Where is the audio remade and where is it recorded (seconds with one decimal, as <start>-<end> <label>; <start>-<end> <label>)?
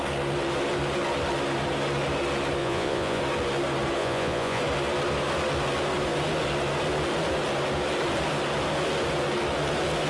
0.0-2.6 recorded; 2.6-3.2 remade; 3.2-4.0 recorded; 4.0-4.6 remade; 4.6-10.1 recorded